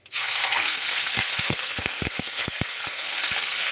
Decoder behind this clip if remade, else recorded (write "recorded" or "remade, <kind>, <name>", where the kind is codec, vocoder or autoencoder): remade, codec, SNAC